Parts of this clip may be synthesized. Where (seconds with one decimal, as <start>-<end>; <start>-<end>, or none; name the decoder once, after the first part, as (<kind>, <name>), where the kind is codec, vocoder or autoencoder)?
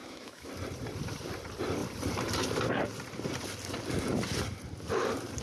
0.0-0.5 (autoencoder, DAC-VAE)